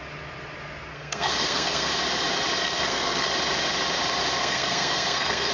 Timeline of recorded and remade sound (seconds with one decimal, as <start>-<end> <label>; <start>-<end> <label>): 0.0-0.9 recorded; 0.9-1.9 remade; 1.9-2.6 recorded; 2.6-3.3 remade; 3.3-4.4 recorded; 4.4-5.5 remade